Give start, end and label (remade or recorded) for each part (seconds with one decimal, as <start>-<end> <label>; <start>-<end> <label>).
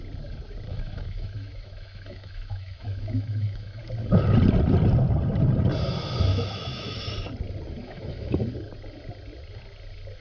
0.0-0.7 recorded; 0.7-3.8 remade; 3.8-6.3 recorded; 6.3-7.0 remade; 7.0-7.8 recorded; 7.8-8.4 remade; 8.4-10.2 recorded